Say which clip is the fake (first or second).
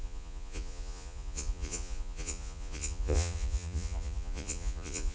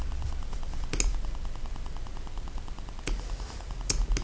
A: first